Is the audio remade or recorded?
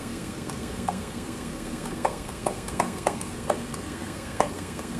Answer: remade